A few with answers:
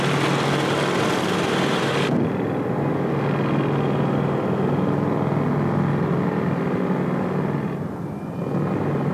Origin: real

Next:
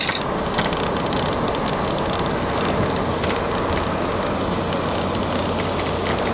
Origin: real